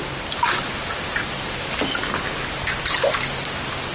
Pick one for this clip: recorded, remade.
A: recorded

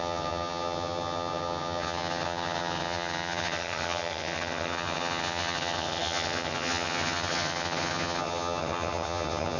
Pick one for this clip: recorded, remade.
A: remade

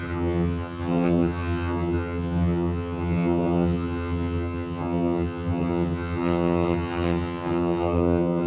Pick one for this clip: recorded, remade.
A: remade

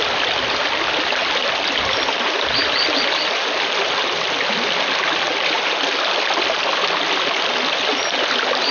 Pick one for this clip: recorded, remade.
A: recorded